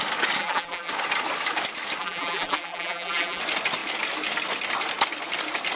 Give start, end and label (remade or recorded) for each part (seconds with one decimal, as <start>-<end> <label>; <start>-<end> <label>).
0.0-0.4 recorded; 0.4-0.9 remade; 0.9-2.0 recorded; 2.0-3.4 remade; 3.4-5.8 recorded